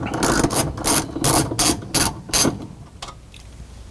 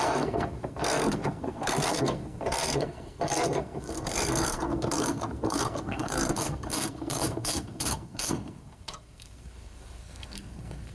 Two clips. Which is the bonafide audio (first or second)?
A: first